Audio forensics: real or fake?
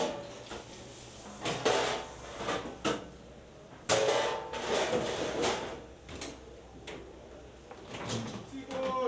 real